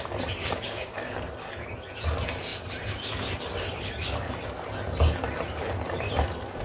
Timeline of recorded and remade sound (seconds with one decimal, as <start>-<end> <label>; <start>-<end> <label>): 0.0-0.4 recorded; 0.4-1.1 remade; 1.1-6.6 recorded